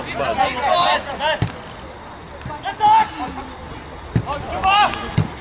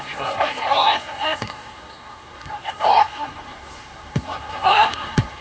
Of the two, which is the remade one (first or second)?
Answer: second